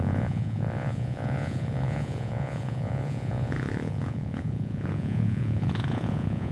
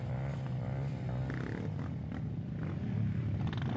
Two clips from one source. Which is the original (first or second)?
second